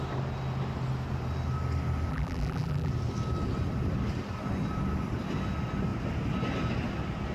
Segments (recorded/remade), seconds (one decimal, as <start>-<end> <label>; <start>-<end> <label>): 0.0-2.1 recorded; 2.1-2.9 remade; 2.9-7.3 recorded

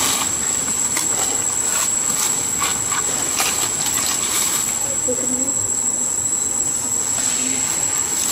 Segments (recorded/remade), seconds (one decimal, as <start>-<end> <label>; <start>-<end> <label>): 0.0-8.3 recorded

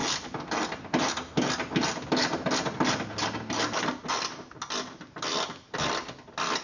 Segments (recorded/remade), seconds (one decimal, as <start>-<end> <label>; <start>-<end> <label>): 0.0-6.6 recorded

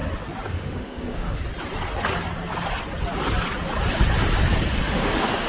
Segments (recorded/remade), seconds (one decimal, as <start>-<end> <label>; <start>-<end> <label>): 0.0-0.5 recorded; 0.5-1.4 remade; 1.4-4.7 recorded; 4.7-5.5 remade

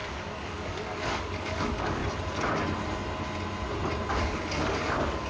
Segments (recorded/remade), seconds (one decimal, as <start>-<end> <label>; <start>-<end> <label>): 0.0-2.0 remade; 2.0-4.1 recorded; 4.1-5.3 remade